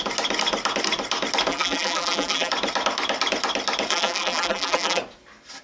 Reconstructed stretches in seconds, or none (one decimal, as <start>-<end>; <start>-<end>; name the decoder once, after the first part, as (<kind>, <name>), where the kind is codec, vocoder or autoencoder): 1.5-2.5 (vocoder, BigVGAN v2); 3.9-5.0